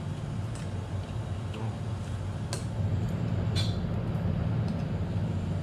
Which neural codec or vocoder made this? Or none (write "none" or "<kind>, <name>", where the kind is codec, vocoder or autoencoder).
none